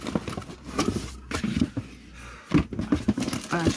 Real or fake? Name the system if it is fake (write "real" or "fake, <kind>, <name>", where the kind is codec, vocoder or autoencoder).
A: real